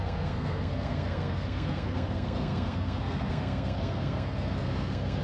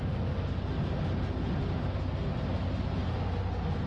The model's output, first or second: first